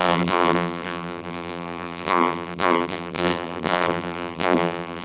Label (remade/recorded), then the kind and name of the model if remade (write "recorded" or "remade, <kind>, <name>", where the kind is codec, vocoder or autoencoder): remade, vocoder, BigVGAN v2